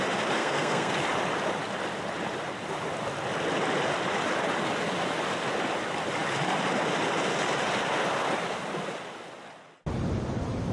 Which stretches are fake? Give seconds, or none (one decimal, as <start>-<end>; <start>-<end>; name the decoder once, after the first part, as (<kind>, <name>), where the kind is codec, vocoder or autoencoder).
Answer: 0.4-0.9 (codec, SNAC)